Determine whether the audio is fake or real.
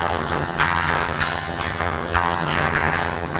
fake